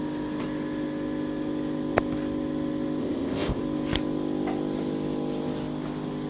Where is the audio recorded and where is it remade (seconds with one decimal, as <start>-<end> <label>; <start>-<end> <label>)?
0.0-3.0 recorded; 3.0-3.6 remade; 3.6-6.3 recorded